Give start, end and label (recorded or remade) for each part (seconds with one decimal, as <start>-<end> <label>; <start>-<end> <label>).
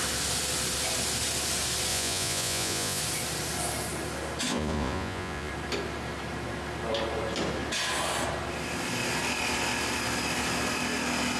0.0-1.9 recorded; 1.9-3.0 remade; 3.0-4.5 recorded; 4.5-5.5 remade; 5.5-11.4 recorded